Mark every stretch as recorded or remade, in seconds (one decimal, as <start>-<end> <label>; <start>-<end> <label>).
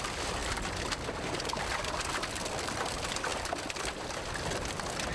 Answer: 0.0-5.1 recorded